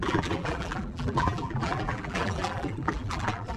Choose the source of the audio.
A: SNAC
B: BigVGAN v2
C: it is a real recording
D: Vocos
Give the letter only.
B